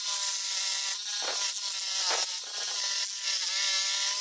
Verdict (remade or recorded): recorded